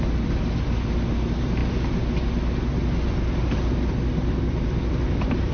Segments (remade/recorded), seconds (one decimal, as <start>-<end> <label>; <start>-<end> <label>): 0.0-5.5 recorded